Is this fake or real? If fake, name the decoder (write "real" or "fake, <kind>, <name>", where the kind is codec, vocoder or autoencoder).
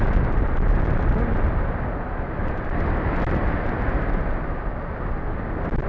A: real